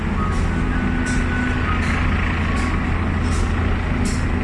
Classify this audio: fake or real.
real